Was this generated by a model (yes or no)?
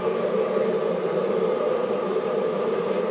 yes